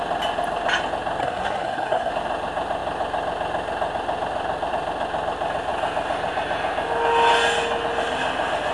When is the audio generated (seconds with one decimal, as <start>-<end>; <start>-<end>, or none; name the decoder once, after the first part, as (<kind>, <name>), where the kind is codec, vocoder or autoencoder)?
1.2-2.1 (codec, SNAC)